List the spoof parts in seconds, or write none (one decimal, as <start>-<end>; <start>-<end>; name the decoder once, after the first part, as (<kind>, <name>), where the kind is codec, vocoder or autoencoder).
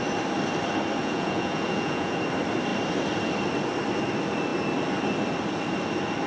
1.0-2.2 (vocoder, Vocos)